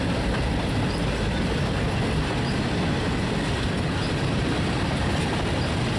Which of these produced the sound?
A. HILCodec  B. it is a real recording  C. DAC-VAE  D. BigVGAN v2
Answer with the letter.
B